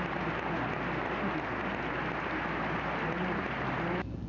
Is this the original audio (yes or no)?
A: yes